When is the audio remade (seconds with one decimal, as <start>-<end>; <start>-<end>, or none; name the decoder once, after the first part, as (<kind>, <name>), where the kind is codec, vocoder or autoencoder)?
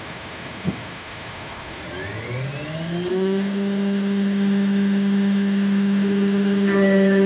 0.0-1.8 (autoencoder, DAC-VAE); 3.1-7.3